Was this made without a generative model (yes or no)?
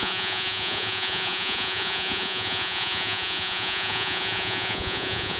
no